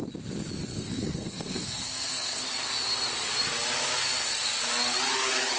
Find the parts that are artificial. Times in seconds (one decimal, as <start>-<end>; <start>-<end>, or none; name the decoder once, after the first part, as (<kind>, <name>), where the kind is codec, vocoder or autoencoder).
0.7-2.5 (codec, SNAC)